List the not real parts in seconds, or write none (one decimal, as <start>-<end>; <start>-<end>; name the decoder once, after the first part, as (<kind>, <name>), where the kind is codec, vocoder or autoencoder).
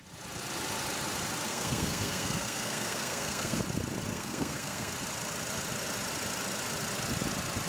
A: 1.5-3.6 (codec, SNAC); 4.1-4.9